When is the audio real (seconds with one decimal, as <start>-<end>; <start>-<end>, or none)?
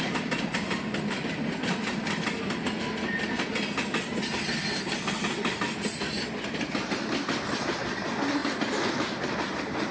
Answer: 0.0-9.9